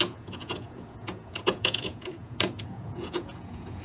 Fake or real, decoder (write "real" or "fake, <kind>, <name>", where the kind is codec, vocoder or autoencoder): fake, vocoder, Vocos